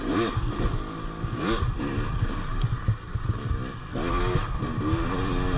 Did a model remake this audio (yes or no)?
no